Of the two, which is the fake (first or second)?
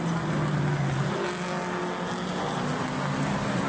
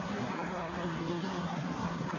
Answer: second